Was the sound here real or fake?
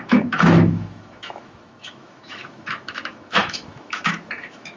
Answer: fake